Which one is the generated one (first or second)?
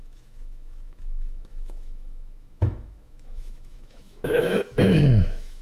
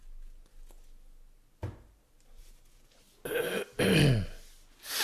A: first